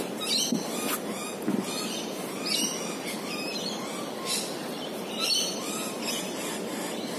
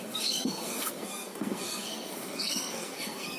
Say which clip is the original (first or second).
first